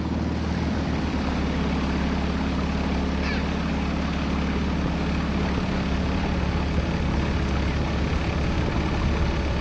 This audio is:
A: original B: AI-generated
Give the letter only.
A